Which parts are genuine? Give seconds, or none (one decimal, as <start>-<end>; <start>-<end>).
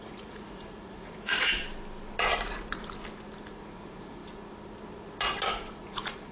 1.6-3.5; 4.2-5.5